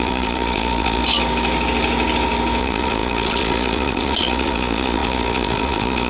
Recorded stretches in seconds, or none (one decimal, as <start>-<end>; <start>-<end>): 1.0-2.6